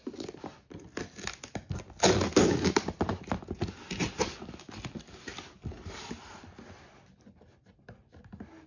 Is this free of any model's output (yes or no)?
yes